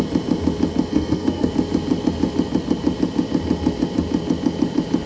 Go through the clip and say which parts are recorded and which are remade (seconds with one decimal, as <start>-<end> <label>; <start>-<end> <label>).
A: 0.0-0.9 recorded; 0.9-1.5 remade; 1.5-5.1 recorded